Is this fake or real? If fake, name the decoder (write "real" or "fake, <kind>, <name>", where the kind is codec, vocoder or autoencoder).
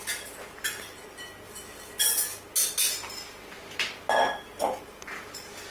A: real